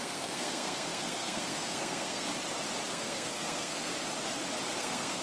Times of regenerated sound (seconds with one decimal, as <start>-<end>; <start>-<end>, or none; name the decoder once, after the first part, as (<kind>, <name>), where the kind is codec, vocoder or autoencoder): 0.0-2.3 (codec, SNAC); 2.9-3.9; 4.8-5.2